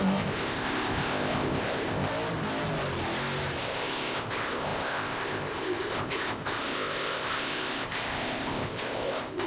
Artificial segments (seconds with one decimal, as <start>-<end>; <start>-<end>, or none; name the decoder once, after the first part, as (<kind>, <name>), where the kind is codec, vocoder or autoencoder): 0.0-2.1 (codec, ZipCodec); 3.6-9.5